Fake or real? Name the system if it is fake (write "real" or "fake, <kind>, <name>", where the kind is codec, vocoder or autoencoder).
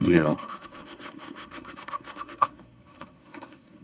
fake, codec, SNAC